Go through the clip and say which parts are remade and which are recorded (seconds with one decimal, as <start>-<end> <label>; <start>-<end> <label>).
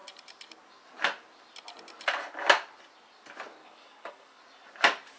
0.0-3.6 recorded; 3.6-4.4 remade; 4.4-5.2 recorded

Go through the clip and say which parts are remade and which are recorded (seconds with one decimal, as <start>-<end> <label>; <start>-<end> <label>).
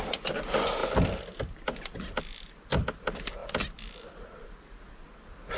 0.0-5.6 recorded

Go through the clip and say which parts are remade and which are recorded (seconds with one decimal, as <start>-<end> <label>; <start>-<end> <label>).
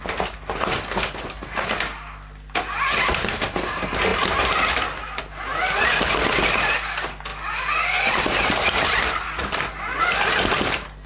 0.0-11.1 recorded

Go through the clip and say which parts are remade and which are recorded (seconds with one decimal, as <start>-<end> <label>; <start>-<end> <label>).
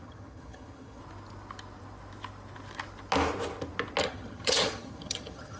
0.0-1.0 remade; 1.0-4.0 recorded; 4.0-5.6 remade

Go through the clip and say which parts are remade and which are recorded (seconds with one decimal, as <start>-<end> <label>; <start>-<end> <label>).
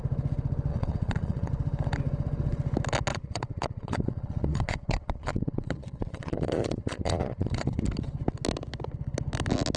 0.0-0.7 recorded; 0.7-1.5 remade; 1.5-3.1 recorded; 3.1-7.8 remade; 7.8-9.8 recorded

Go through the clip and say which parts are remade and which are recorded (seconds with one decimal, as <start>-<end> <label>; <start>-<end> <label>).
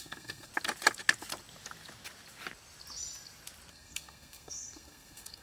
0.0-0.5 remade; 0.5-3.7 recorded; 3.7-5.4 remade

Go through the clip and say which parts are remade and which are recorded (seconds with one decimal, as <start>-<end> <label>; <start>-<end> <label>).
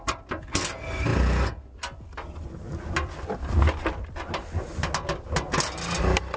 0.0-6.4 recorded